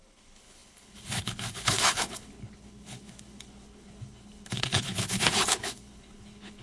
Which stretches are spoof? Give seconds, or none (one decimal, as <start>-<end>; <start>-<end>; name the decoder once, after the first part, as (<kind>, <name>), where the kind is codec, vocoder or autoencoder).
0.0-6.6 (codec, HILCodec)